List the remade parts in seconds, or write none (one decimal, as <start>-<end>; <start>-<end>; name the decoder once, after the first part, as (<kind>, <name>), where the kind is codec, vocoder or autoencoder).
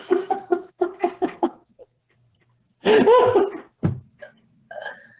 0.0-2.0 (codec, SNAC)